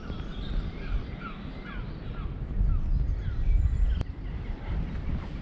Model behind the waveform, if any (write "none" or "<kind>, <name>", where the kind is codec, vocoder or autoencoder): none